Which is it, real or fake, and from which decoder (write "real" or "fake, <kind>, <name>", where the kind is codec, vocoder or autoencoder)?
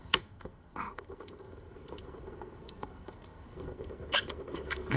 fake, codec, SNAC